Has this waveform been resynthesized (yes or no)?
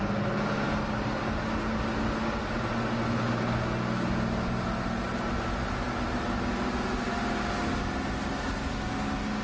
no